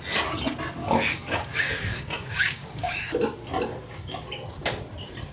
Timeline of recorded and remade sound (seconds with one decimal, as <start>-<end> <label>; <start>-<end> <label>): 0.0-0.8 recorded; 0.8-3.0 remade; 3.0-5.3 recorded